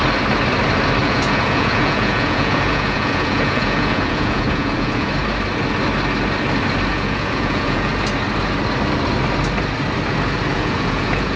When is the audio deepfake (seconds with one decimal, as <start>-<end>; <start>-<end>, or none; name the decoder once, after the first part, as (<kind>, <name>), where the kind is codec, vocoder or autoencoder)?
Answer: 1.0-5.1 (vocoder, Vocos); 6.9-7.9; 10.5-11.4